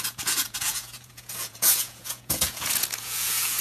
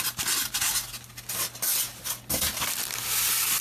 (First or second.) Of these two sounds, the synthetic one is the first